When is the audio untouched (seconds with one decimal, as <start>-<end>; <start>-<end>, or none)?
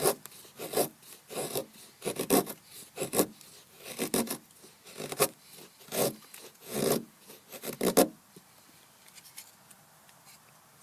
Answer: 0.0-6.0; 7.4-10.8